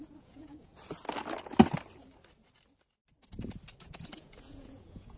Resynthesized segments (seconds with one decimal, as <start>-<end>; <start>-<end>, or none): 0.0-0.7; 3.8-5.2